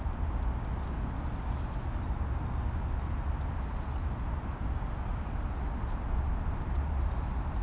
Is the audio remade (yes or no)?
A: no